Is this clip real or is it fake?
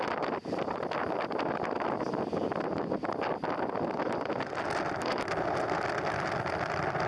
real